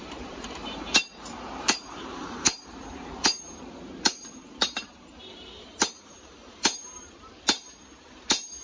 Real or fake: fake